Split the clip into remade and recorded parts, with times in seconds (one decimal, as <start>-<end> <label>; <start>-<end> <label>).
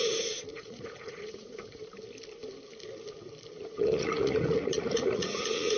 0.0-0.5 recorded; 0.5-1.8 remade; 1.8-3.6 recorded; 3.6-5.8 remade